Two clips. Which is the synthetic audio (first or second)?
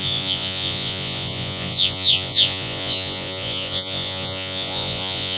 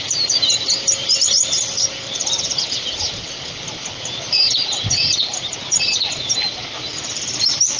first